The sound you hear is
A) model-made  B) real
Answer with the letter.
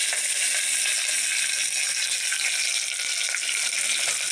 B